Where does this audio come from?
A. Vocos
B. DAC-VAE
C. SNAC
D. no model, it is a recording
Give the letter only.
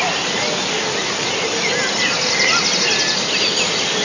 D